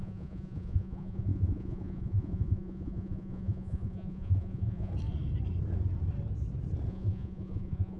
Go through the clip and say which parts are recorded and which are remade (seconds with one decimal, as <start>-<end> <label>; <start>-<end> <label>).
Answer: 0.0-4.9 remade; 4.9-6.9 recorded; 6.9-8.0 remade